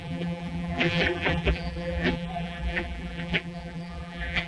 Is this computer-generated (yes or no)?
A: yes